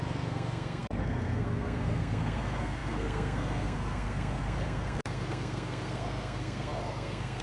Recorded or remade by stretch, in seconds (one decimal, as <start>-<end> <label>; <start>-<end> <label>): 0.0-7.4 remade